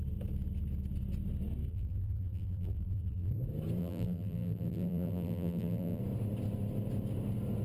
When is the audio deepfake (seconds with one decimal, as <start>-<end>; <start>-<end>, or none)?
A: 1.7-3.3; 3.8-6.0

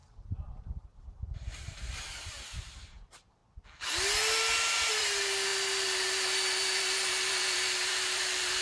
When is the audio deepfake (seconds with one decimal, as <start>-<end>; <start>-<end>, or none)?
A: 0.0-3.4; 4.9-8.6

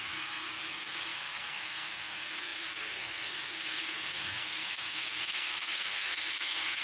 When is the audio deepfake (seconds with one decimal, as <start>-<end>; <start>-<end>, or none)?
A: 0.0-6.8

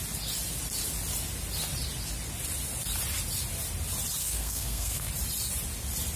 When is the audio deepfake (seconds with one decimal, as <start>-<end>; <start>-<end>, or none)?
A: 4.2-5.1

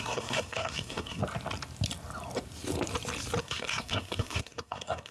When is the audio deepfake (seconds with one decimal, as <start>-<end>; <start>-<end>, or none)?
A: 0.0-1.2; 3.4-5.1

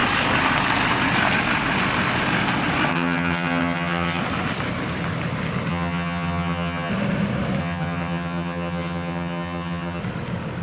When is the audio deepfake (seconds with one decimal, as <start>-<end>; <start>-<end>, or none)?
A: 2.9-4.2; 5.7-6.9; 7.6-10.0

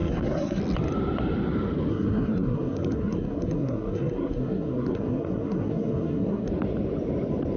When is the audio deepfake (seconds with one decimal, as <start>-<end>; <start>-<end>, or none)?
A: 0.0-0.6; 1.9-6.5